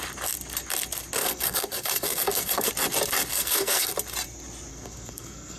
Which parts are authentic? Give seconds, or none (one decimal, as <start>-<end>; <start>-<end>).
0.0-1.2; 2.7-3.3; 3.9-4.7

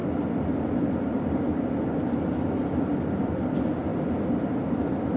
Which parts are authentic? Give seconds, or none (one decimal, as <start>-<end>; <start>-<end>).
0.0-5.2

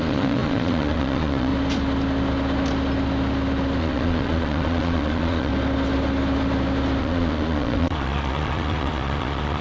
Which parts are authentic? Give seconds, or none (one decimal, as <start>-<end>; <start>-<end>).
1.5-3.8; 5.5-7.0